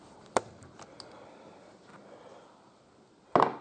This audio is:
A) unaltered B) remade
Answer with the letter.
A